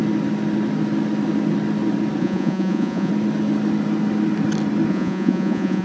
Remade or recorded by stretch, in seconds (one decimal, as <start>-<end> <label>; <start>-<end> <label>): 0.0-2.2 recorded; 2.2-3.1 remade; 3.1-4.9 recorded; 4.9-5.8 remade